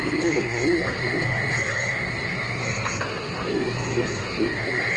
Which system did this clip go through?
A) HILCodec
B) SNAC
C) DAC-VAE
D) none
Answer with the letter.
B